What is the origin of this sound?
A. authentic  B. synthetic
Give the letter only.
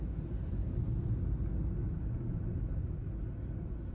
A